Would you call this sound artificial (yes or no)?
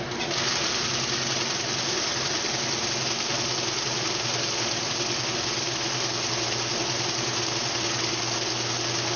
no